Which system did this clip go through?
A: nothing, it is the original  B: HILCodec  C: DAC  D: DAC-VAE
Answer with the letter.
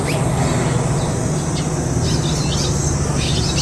A